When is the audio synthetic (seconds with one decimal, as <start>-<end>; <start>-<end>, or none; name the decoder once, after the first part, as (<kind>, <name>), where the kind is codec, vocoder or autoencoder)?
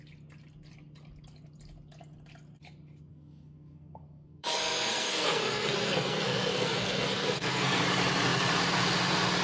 3.1-7.8 (codec, SNAC)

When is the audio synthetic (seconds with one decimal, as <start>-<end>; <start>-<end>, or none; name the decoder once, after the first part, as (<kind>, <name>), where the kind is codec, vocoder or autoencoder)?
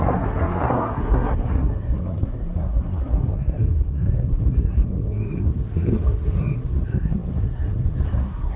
0.0-8.6 (codec, SNAC)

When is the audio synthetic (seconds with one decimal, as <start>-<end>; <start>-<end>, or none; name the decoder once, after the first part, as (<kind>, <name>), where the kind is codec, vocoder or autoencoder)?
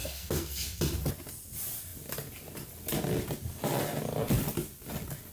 0.0-0.8 (codec, SNAC)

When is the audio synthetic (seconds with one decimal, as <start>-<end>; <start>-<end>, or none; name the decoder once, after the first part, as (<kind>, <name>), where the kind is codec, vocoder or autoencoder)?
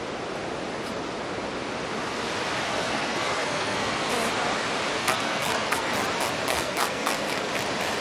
2.7-4.1 (codec, SNAC); 5.0-5.9; 6.5-7.5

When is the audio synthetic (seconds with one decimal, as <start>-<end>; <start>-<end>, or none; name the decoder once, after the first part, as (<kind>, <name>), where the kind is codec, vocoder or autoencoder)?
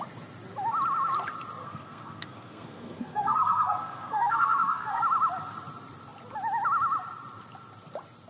1.6-5.0 (codec, SNAC)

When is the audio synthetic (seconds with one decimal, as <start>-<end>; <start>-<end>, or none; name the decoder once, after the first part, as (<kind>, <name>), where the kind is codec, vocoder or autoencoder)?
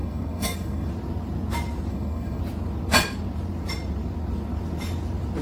0.0-0.9 (codec, SNAC); 1.9-2.4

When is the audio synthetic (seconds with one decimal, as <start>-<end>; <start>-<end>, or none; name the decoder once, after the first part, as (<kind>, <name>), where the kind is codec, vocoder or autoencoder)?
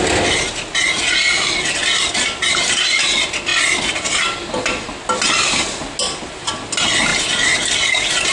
none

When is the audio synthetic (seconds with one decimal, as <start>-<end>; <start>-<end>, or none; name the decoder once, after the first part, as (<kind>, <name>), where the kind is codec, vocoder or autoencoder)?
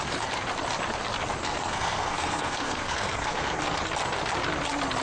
1.4-3.6 (codec, SNAC)